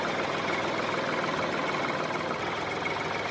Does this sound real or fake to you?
real